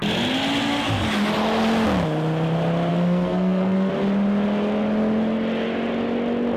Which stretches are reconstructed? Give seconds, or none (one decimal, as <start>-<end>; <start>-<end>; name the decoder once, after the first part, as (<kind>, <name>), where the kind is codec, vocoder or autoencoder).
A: 2.9-3.9 (codec, SNAC)